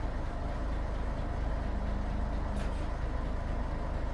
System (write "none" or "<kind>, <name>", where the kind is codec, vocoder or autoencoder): none